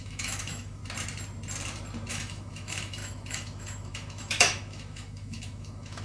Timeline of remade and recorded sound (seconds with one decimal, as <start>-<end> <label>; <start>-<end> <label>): 0.0-0.8 remade; 0.8-2.1 recorded; 2.1-6.0 remade